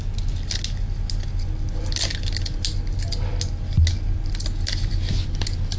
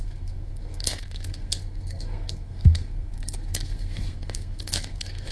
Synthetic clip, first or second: second